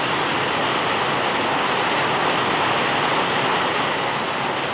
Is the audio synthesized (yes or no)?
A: no